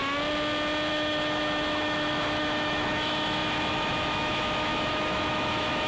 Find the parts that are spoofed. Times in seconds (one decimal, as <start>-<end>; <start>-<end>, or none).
0.9-5.9